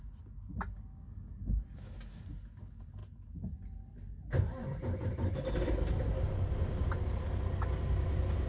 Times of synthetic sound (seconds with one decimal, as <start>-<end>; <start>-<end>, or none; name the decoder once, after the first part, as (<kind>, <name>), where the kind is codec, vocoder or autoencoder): none